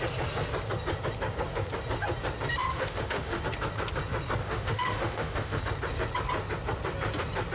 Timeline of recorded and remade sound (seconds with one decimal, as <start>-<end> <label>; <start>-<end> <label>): 0.0-2.7 recorded; 2.7-3.4 remade; 3.4-4.4 recorded; 4.4-5.6 remade; 5.6-7.5 recorded

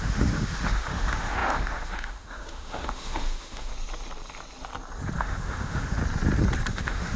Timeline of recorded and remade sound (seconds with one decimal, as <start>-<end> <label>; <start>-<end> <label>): 0.0-3.7 remade; 3.7-5.2 recorded; 5.2-6.0 remade; 6.0-6.7 recorded; 6.7-7.2 remade